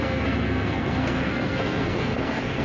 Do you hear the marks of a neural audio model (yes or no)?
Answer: yes